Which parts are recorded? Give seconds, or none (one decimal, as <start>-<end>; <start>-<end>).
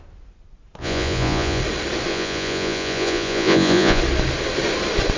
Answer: 0.0-0.8; 1.6-2.1; 4.0-5.2